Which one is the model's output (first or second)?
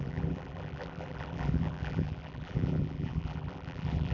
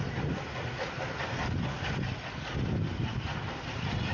first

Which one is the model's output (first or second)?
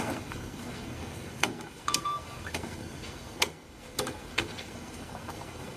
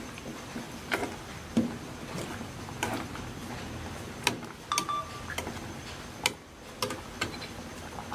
first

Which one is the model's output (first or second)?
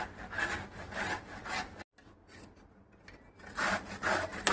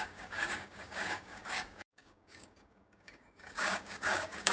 second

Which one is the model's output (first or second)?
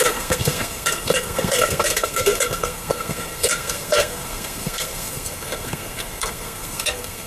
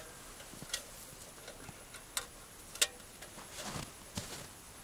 first